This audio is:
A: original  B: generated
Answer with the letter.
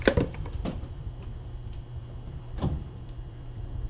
B